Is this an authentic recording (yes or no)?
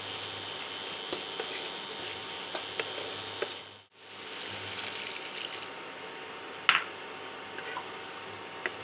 yes